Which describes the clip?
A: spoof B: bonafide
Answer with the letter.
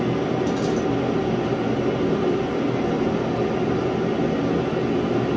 B